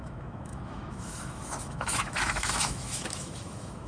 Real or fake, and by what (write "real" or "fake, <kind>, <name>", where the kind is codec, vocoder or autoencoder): fake, autoencoder, DAC-VAE